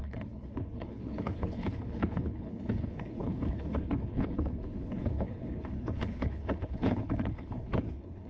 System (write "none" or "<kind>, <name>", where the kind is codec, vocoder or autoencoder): codec, HILCodec